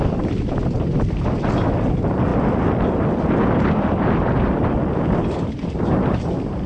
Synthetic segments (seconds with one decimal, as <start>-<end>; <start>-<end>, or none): none